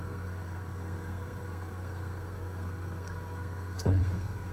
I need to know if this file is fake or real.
fake